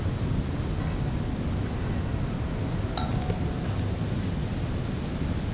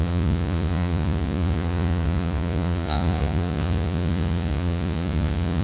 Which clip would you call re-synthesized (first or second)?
second